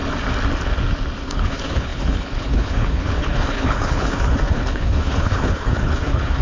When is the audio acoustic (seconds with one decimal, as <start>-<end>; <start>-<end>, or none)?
0.0-1.2